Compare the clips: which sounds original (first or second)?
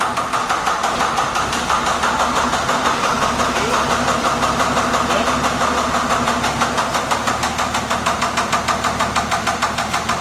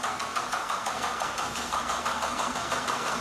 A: first